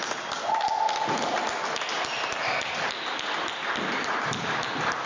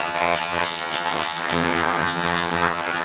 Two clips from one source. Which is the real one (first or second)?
first